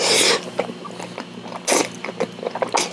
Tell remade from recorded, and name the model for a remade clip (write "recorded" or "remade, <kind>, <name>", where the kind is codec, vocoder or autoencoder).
recorded